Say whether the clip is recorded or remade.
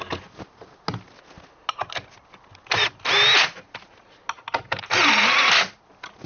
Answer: recorded